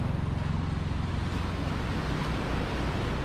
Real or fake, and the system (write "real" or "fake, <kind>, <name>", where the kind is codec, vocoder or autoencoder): real